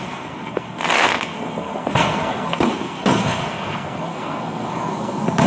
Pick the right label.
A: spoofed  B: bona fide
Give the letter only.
A